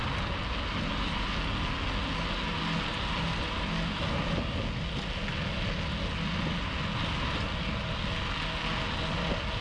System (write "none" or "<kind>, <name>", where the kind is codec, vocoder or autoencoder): none